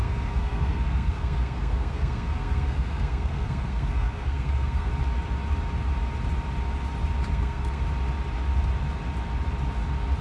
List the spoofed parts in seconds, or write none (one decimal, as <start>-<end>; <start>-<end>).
0.0-4.9; 7.3-7.8